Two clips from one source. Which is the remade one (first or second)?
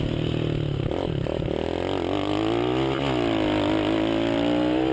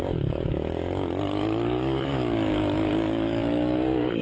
second